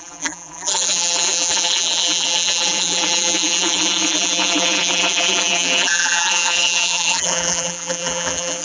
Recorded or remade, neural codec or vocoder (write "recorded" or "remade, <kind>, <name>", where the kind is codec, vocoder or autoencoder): remade, vocoder, BigVGAN v2